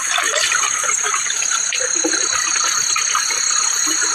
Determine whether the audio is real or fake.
fake